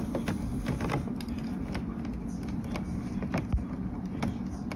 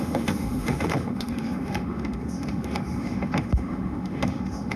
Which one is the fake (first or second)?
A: second